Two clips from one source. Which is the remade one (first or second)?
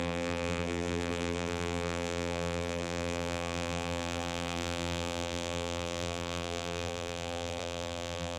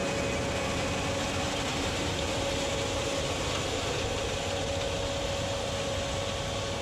first